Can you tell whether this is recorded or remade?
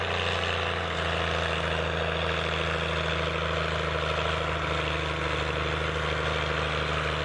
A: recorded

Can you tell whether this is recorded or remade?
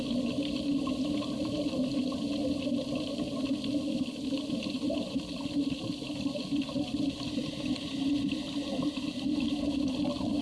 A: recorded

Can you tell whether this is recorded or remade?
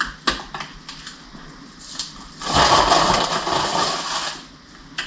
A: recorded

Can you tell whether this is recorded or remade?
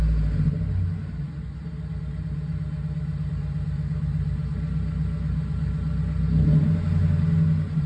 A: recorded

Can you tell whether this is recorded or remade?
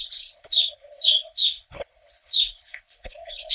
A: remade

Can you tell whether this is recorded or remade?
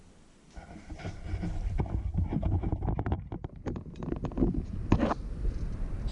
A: recorded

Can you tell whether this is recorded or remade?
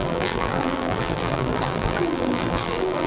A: remade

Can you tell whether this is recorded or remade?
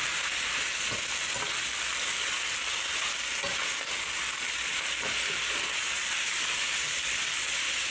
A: recorded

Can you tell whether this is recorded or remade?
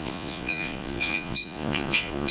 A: remade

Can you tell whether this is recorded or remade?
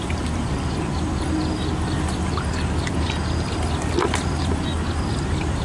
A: recorded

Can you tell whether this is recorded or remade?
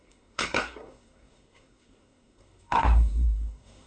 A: remade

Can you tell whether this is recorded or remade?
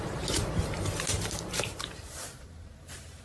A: remade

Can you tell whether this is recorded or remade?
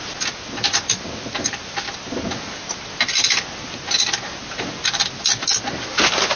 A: recorded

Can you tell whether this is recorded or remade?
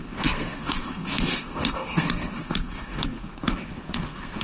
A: remade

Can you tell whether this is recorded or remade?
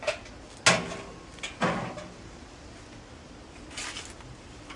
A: recorded